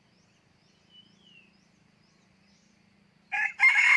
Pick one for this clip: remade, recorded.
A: recorded